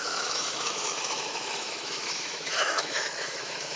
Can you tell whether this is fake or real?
fake